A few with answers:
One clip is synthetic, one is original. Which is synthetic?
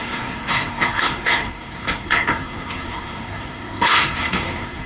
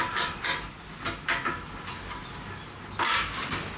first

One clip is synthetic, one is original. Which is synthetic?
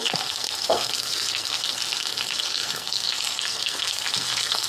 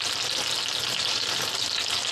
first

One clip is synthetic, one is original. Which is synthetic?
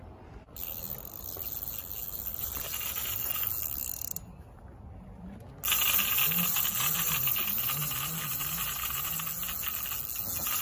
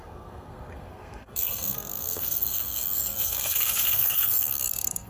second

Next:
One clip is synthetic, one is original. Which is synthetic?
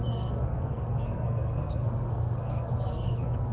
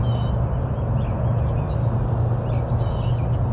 first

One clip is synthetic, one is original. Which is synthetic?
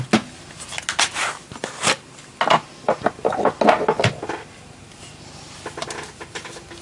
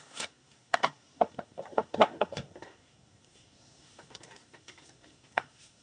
second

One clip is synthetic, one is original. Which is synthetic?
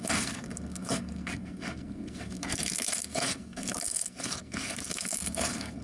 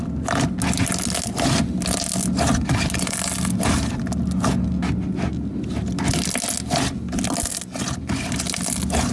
first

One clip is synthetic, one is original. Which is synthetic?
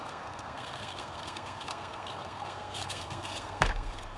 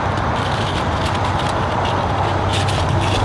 first